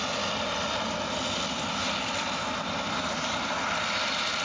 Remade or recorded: recorded